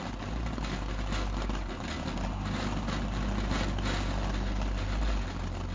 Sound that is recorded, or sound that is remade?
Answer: recorded